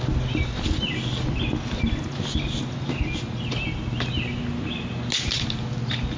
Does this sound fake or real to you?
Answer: real